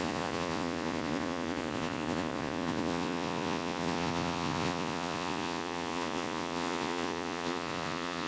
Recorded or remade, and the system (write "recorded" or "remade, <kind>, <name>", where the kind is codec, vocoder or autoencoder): remade, vocoder, Vocos